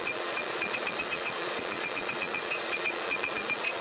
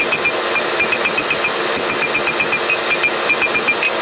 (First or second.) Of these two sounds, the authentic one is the second